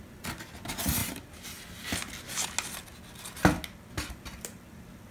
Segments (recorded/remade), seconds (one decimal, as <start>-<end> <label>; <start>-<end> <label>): 0.0-1.0 remade; 1.0-4.1 recorded; 4.1-5.1 remade